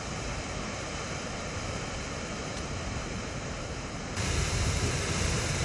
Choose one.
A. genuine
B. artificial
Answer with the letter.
B